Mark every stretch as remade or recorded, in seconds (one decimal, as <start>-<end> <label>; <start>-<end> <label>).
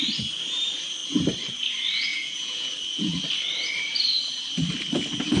0.0-2.1 recorded; 2.1-2.7 remade; 2.7-5.4 recorded